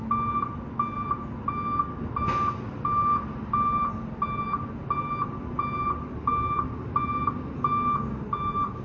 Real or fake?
real